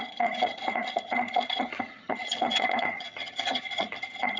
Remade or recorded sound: remade